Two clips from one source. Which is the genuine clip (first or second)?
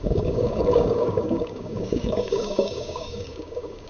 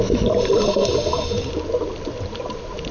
second